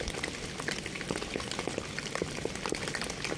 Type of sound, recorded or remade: recorded